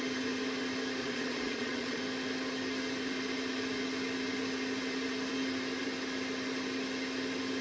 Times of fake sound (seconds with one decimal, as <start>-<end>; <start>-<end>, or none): 1.0-2.0